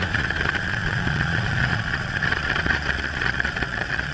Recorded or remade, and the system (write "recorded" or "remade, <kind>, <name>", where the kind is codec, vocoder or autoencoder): remade, vocoder, Vocos